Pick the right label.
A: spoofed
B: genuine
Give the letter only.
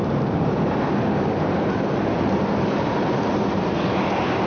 A